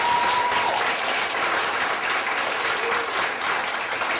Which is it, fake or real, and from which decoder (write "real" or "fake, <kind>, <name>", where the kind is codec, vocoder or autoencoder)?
real